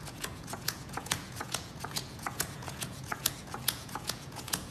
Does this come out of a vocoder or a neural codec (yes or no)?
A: yes